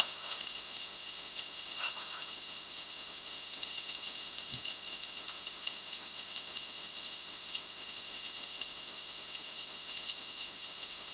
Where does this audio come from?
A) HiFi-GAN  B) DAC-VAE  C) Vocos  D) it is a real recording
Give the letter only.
B